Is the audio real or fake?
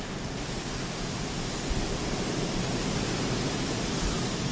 real